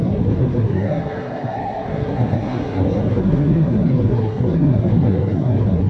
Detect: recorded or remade remade